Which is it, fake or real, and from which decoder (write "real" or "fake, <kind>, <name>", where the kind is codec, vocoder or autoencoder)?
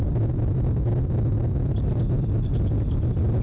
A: real